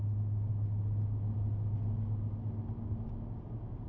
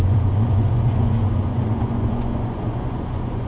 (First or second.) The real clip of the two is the first